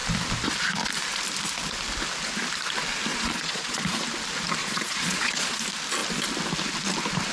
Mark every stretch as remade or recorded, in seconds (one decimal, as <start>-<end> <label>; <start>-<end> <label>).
0.0-3.1 recorded; 3.1-4.0 remade; 4.0-4.6 recorded; 4.6-5.6 remade; 5.6-7.3 recorded